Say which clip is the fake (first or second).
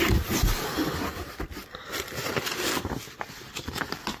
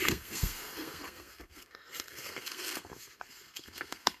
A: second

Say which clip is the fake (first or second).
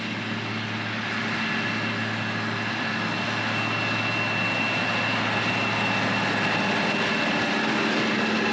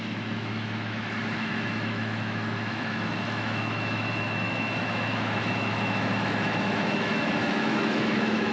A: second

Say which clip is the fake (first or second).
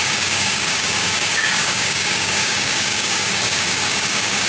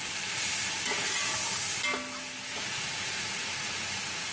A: first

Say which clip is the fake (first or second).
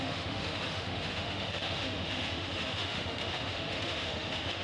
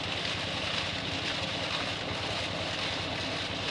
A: first